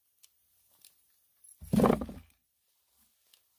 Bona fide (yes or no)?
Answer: yes